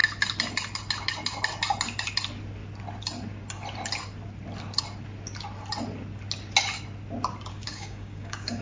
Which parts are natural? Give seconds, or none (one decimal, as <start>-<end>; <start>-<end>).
0.0-7.5